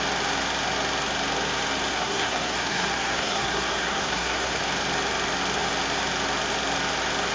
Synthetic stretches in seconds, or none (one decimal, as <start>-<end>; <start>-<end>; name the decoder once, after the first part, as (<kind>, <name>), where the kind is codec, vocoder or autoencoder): 1.9-4.6 (codec, SNAC)